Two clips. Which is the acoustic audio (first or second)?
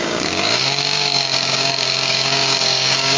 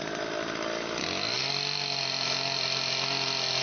second